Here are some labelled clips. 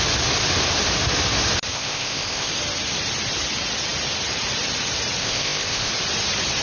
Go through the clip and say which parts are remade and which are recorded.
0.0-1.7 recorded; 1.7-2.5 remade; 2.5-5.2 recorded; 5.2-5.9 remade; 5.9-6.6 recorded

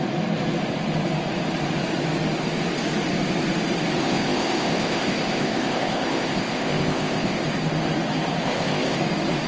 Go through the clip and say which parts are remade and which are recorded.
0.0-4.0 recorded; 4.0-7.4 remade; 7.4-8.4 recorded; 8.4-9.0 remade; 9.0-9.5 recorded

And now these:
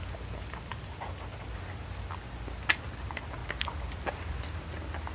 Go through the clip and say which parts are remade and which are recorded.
0.0-5.1 recorded